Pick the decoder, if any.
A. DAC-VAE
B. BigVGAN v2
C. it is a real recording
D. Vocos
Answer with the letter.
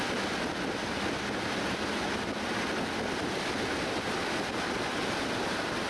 C